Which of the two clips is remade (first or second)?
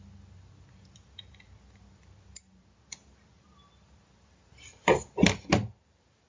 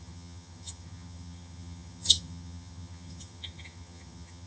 second